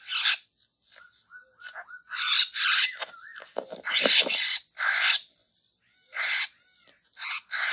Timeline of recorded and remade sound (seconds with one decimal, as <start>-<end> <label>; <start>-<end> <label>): 0.0-2.3 recorded; 2.3-5.8 remade; 5.8-7.7 recorded